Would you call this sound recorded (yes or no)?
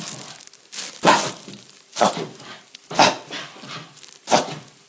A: yes